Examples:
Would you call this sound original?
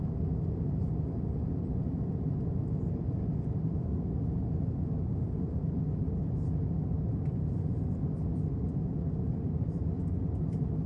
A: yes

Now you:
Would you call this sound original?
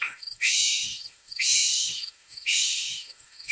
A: no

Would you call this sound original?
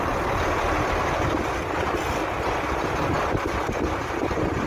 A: yes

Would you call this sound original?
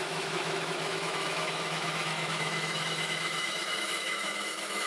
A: no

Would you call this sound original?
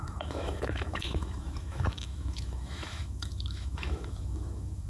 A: no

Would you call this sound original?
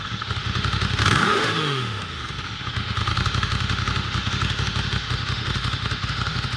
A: no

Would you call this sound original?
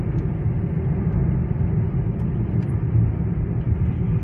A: yes